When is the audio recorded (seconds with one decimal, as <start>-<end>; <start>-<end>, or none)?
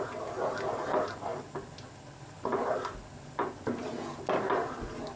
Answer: 0.0-5.2